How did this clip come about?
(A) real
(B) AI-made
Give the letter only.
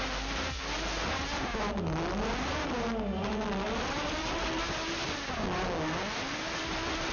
A